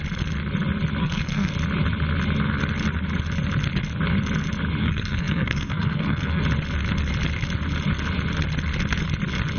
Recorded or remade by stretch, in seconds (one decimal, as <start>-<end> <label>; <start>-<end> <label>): 0.0-1.0 recorded; 1.0-1.5 remade; 1.5-4.8 recorded; 4.8-6.4 remade; 6.4-9.6 recorded